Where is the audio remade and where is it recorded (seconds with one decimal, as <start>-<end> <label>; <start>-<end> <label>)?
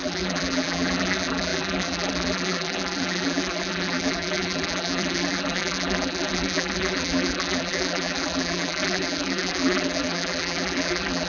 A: 0.0-11.3 remade